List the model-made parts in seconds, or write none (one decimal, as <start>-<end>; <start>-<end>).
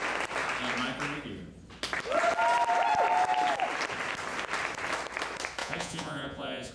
5.6-6.7